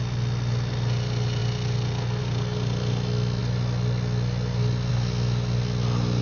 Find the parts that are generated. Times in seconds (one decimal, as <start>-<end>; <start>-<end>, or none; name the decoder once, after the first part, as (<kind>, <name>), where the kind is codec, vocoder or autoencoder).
none